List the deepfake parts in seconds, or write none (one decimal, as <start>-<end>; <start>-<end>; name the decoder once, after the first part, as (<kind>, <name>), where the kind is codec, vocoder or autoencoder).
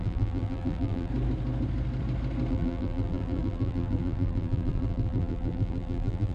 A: 0.0-1.1 (vocoder, BigVGAN v2); 2.5-6.3